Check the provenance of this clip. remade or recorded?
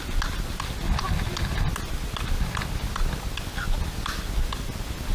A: recorded